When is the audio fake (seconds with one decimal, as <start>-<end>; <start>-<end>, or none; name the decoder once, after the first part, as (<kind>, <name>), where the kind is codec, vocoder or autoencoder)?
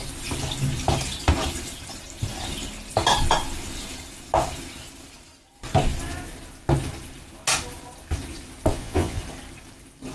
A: 8.7-9.2 (vocoder, Vocos)